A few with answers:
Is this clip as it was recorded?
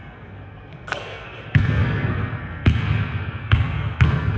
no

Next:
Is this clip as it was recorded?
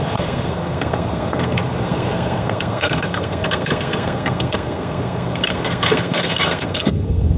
no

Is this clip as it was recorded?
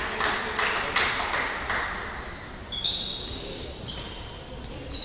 yes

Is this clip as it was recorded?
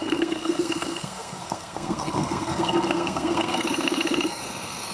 no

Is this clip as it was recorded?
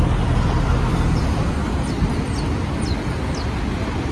yes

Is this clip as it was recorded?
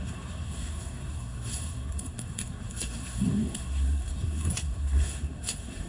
no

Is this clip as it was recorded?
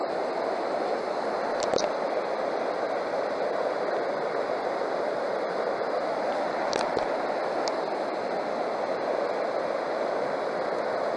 yes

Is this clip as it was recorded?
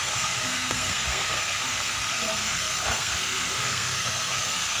no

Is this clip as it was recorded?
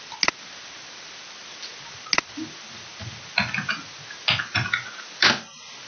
yes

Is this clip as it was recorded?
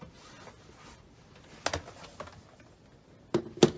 yes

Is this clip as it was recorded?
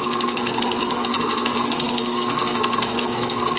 no